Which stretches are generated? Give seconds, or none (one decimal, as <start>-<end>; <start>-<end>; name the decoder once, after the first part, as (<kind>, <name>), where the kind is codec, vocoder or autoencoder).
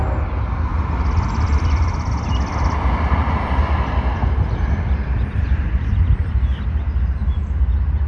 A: 0.7-5.6 (vocoder, BigVGAN v2)